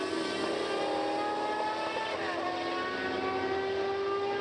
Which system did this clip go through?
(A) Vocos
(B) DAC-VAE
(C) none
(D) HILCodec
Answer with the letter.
C